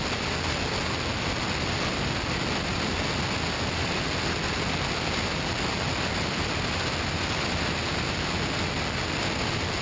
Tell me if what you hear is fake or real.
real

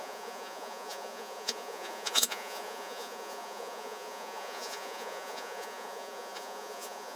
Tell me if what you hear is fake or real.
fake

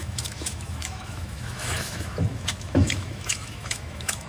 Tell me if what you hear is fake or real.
fake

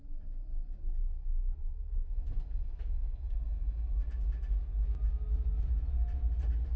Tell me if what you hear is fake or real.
real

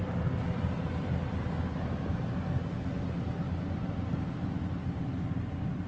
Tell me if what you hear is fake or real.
real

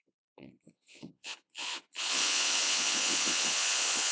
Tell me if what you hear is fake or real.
fake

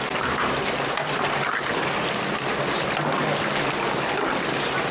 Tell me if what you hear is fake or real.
real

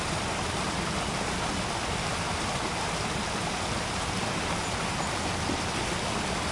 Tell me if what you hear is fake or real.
real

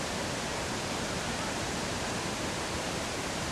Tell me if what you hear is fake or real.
fake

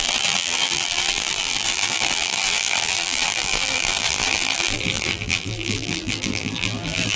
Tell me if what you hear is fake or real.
fake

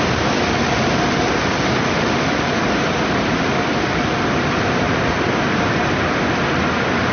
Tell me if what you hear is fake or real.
real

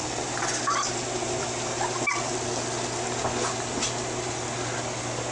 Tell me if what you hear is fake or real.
real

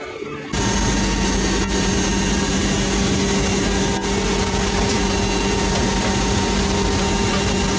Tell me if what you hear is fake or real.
real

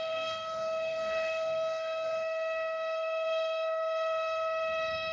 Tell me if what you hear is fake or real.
fake